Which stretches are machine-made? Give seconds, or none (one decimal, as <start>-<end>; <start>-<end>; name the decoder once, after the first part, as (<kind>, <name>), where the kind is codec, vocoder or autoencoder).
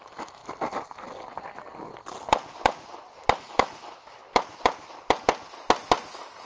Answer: 0.0-0.4 (autoencoder, DAC-VAE); 3.4-4.2; 6.1-6.5